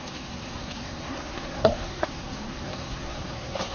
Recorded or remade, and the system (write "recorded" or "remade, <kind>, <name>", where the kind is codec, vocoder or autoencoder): remade, codec, SNAC